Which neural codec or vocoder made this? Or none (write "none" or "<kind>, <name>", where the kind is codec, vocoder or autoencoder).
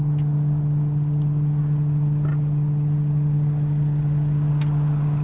none